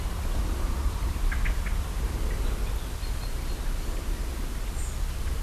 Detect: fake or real real